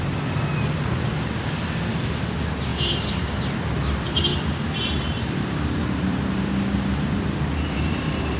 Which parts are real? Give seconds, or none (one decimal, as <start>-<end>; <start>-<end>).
0.0-2.7; 3.8-4.3; 6.2-8.4